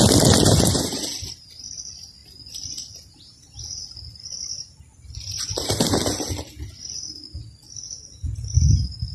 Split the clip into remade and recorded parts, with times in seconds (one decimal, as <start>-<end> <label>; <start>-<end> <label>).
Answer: 0.0-9.1 recorded